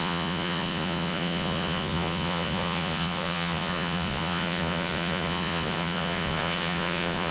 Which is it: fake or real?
fake